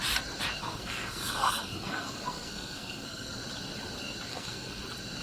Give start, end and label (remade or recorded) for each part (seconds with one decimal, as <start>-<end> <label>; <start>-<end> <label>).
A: 0.0-0.6 recorded; 0.6-3.3 remade; 3.3-4.3 recorded; 4.3-4.8 remade; 4.8-5.2 recorded